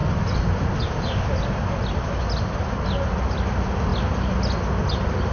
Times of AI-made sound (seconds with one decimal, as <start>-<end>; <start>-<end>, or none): none